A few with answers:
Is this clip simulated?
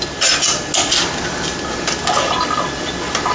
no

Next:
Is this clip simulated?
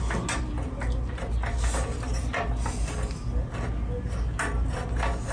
no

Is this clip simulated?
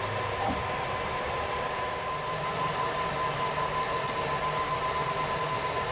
yes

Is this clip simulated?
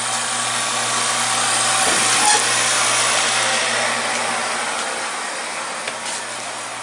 no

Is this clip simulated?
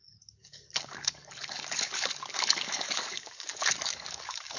yes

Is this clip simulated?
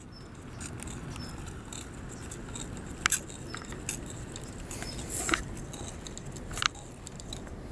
no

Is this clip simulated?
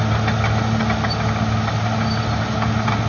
no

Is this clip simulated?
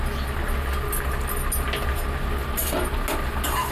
no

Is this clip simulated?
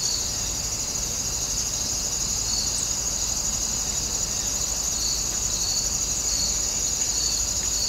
no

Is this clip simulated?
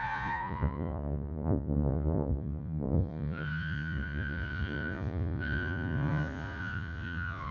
yes